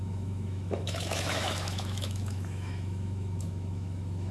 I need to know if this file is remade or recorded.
remade